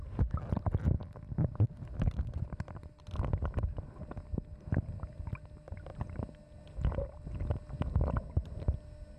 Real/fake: real